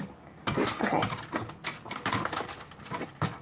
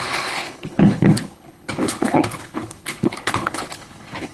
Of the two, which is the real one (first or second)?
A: first